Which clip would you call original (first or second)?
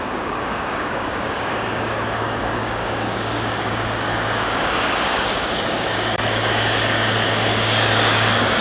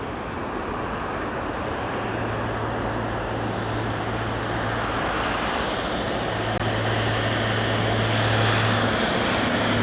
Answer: second